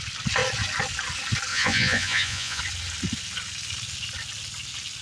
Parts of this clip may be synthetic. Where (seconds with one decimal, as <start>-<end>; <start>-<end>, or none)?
1.5-2.6